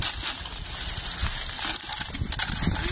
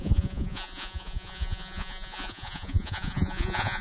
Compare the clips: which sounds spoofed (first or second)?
second